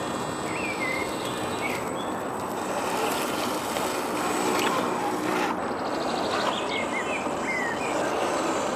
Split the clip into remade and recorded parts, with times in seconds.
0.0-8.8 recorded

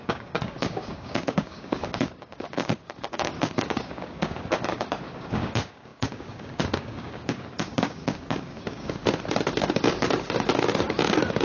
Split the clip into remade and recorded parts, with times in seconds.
0.0-9.0 remade; 9.0-9.5 recorded; 9.5-11.4 remade

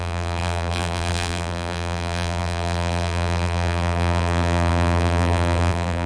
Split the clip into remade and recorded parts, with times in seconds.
0.0-6.1 remade

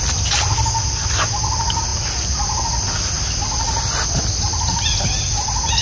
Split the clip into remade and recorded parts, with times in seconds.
0.0-5.8 recorded